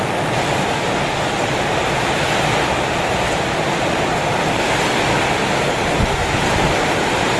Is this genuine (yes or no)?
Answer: yes